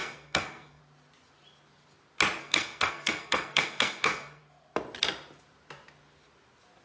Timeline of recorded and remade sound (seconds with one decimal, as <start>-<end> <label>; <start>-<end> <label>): 0.0-0.8 remade; 0.8-2.4 recorded; 2.4-4.4 remade; 4.4-6.8 recorded